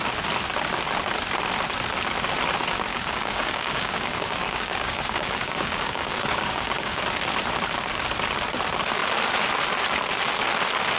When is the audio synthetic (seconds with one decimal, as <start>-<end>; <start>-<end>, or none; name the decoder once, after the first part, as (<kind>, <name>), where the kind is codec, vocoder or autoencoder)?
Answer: 2.9-7.0 (codec, DAC)